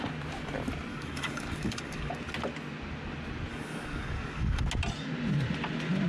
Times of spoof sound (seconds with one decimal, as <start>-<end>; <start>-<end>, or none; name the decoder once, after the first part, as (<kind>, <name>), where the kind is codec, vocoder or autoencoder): 0.9-2.1 (codec, DAC); 3.5-4.6